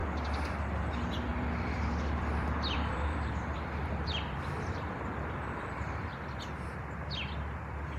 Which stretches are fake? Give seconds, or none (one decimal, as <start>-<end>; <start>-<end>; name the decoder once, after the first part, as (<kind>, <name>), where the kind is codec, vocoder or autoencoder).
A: 1.3-6.1 (vocoder, BigVGAN v2)